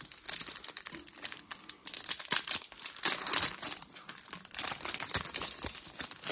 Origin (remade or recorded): recorded